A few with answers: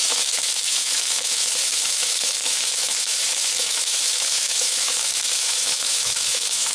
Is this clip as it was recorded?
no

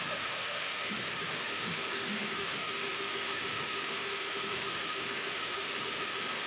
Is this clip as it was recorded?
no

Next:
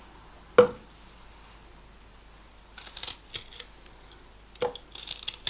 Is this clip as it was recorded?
yes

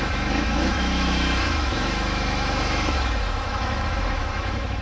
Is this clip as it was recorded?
no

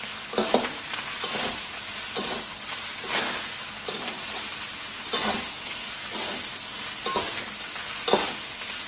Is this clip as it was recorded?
yes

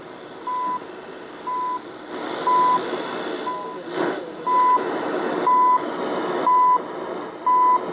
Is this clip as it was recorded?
yes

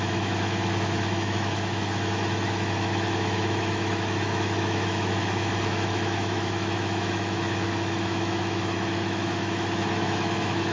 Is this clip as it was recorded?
no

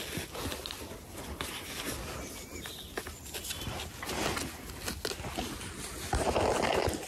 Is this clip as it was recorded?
yes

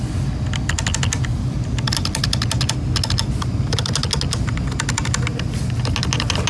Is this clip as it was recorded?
yes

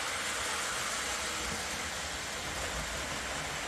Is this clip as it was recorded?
yes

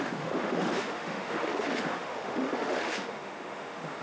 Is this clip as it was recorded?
no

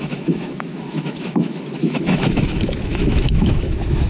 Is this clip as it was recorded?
no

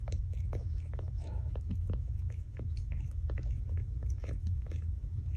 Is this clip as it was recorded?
no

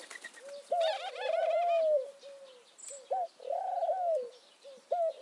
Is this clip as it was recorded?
yes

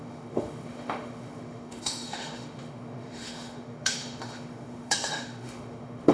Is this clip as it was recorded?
no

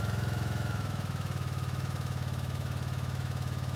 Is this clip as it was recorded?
no